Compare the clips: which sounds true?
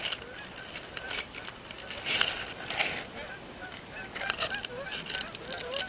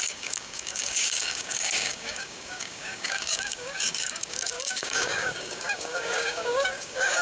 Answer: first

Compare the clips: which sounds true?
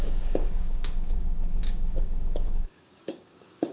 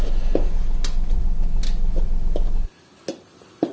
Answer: second